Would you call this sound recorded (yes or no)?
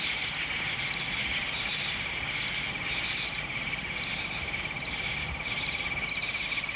yes